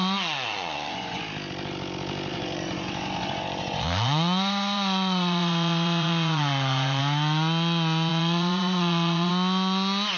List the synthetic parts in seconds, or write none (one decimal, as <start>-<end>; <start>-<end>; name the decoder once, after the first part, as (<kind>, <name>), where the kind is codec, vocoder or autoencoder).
0.0-1.2 (vocoder, Vocos); 2.3-7.0; 8.1-9.3